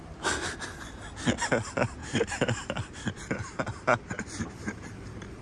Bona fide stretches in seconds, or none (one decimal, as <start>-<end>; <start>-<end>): 0.0-2.0